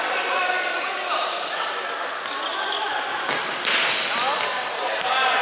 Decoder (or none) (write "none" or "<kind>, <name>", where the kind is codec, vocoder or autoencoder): none